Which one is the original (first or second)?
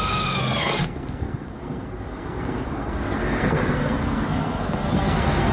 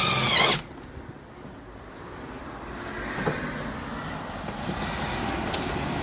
second